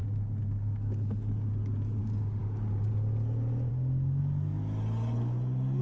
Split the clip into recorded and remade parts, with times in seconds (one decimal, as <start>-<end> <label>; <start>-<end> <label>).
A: 0.0-2.0 recorded; 2.0-2.4 remade; 2.4-3.7 recorded; 3.7-4.2 remade; 4.2-5.8 recorded